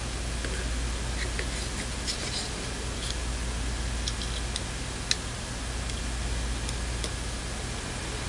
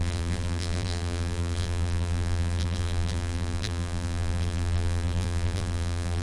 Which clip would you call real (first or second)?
first